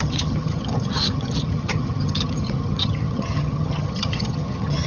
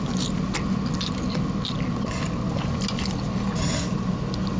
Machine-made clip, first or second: first